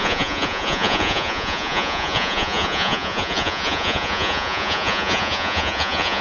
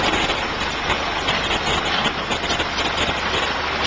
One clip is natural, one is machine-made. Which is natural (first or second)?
second